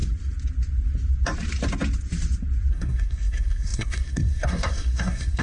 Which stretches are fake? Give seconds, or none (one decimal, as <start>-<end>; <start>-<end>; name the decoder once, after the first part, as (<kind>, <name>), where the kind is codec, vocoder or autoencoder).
2.7-5.4 (codec, SNAC)